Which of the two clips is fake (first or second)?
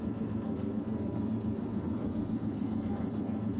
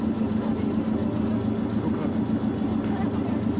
first